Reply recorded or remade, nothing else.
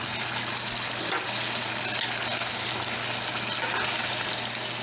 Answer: recorded